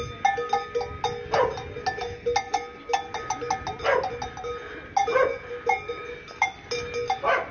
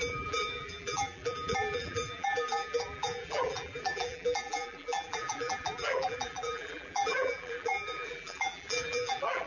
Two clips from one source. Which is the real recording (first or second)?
first